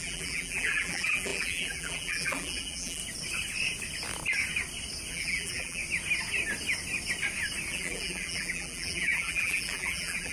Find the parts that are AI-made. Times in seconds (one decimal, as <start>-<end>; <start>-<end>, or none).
0.0-3.0; 5.1-5.8; 7.7-10.3